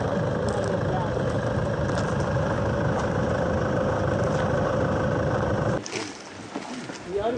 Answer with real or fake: real